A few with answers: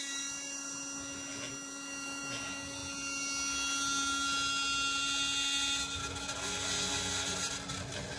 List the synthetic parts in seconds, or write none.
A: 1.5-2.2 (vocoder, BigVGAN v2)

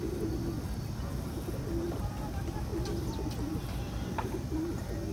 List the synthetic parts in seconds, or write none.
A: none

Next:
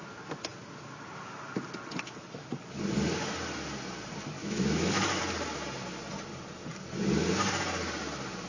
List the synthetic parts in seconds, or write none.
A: 4.4-5.2 (autoencoder, DAC-VAE)

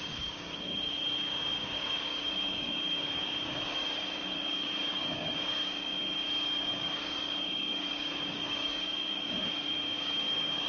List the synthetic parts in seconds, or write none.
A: 0.0-10.7 (codec, DAC)